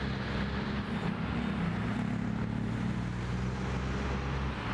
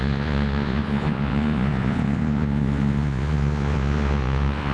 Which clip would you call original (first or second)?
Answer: first